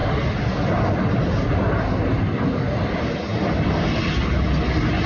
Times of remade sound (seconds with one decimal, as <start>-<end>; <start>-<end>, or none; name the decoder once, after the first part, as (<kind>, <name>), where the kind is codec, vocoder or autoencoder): 0.0-2.0 (vocoder, BigVGAN v2); 3.3-3.8